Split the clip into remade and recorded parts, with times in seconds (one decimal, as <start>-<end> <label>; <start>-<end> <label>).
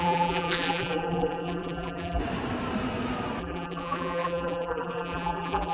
0.0-2.2 remade; 2.2-3.4 recorded; 3.4-5.7 remade